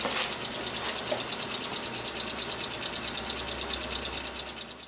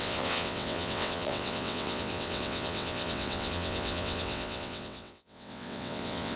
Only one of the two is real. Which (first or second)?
first